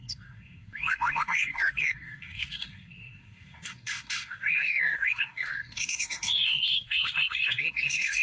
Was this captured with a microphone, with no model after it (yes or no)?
no